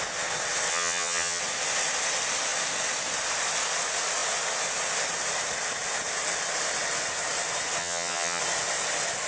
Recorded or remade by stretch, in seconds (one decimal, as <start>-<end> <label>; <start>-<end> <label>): 0.0-0.7 recorded; 0.7-1.4 remade; 1.4-7.8 recorded; 7.8-8.4 remade; 8.4-9.3 recorded